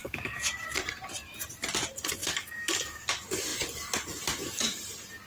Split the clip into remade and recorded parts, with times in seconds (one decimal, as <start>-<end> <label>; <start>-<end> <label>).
0.0-0.5 remade; 0.5-2.2 recorded; 2.2-3.1 remade; 3.1-5.3 recorded